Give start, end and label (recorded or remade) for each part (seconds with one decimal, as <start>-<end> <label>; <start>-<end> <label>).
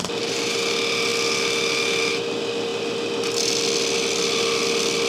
0.0-5.1 recorded